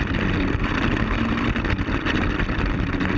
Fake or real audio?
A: real